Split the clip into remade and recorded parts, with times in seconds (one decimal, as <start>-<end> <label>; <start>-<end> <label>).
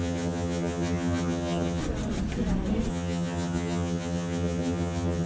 0.0-1.8 remade; 1.8-2.9 recorded; 2.9-5.3 remade